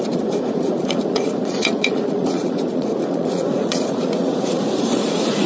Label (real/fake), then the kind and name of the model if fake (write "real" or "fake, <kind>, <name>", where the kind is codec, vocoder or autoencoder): fake, vocoder, Vocos